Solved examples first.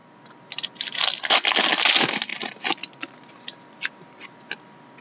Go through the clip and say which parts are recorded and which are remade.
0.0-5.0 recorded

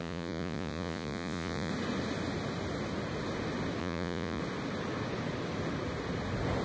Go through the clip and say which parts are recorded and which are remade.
0.0-1.7 remade; 1.7-3.8 recorded; 3.8-4.4 remade; 4.4-6.6 recorded

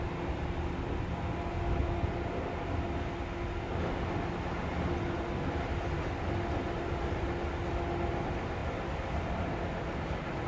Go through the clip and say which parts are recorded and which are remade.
0.0-10.5 recorded